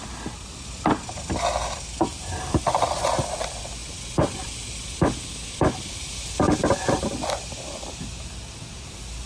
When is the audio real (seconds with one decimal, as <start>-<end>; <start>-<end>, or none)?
0.0-2.1; 2.8-9.3